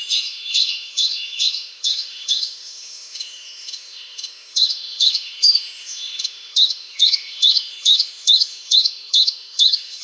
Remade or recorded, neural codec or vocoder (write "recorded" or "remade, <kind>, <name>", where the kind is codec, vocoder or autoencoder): remade, autoencoder, DAC-VAE